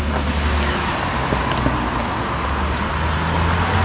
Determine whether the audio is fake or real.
real